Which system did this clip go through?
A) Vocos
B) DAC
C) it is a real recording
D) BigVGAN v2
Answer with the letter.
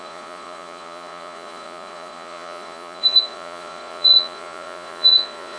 A